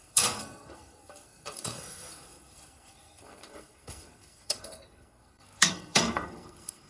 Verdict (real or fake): fake